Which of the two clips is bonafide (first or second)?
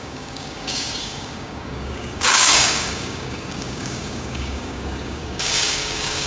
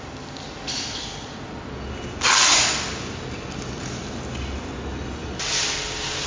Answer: second